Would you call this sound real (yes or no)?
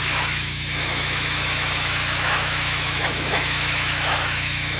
no